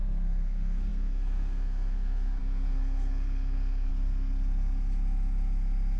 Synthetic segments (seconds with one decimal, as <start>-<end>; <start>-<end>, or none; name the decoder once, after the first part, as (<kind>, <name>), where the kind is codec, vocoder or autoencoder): 0.0-3.9 (codec, SNAC)

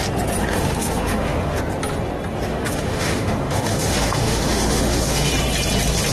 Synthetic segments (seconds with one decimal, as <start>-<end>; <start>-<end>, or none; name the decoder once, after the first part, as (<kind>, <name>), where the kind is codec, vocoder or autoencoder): 0.4-1.6 (autoencoder, DAC-VAE); 2.5-5.3

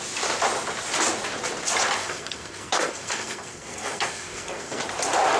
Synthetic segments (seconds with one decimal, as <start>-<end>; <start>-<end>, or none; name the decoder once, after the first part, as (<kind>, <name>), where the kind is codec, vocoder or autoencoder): 2.0-4.8 (codec, SNAC)

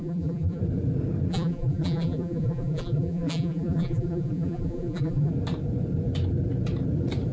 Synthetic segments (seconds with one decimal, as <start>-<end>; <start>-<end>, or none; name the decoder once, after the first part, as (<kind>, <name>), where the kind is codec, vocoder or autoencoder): 0.0-0.6 (vocoder, BigVGAN v2); 1.3-5.3

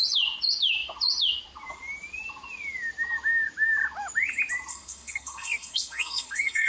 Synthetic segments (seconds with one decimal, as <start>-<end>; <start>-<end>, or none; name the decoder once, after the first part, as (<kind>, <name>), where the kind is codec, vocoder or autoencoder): 4.7-6.7 (codec, SNAC)

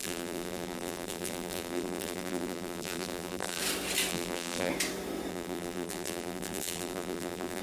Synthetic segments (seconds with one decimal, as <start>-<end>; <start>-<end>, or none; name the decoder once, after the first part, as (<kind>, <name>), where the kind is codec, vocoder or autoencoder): 0.0-3.6 (vocoder, BigVGAN v2); 4.1-4.7; 5.3-7.6

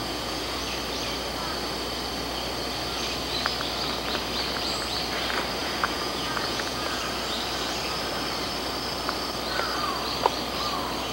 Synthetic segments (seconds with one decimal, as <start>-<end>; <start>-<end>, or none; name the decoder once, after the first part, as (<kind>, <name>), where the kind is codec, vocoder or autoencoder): 0.0-0.6 (vocoder, Vocos); 5.6-7.0

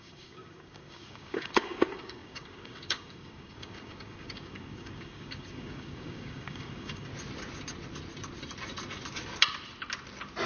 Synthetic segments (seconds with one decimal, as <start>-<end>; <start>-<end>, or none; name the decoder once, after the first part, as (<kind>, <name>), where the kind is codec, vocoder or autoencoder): 0.0-7.1 (codec, DAC)